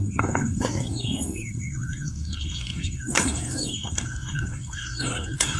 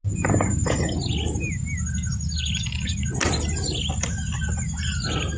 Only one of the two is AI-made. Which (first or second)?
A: first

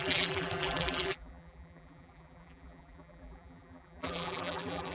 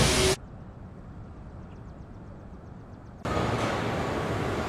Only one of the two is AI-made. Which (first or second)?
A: first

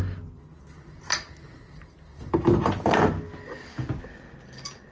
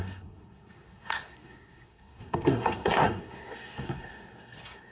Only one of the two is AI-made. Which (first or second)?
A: second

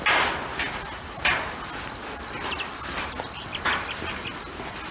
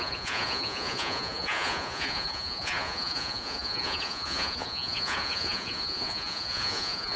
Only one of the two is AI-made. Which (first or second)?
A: second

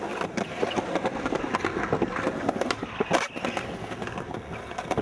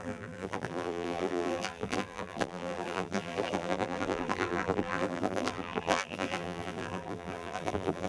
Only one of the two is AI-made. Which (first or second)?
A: second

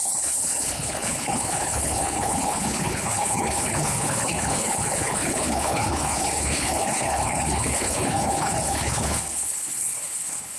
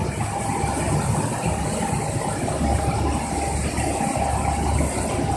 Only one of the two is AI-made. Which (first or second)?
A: first